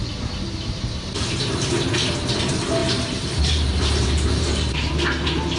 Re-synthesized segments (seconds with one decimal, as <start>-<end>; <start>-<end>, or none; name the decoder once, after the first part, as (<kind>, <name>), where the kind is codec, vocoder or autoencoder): 0.0-1.7 (vocoder, BigVGAN v2); 2.8-4.9